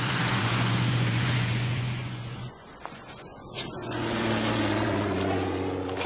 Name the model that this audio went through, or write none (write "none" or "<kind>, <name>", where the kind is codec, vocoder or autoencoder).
vocoder, Vocos